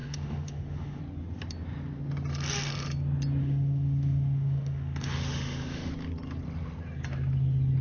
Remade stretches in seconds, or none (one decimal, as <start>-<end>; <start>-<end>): 0.0-1.0; 3.4-5.9